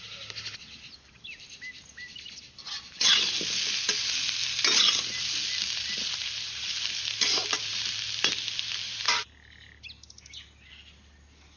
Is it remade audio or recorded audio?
recorded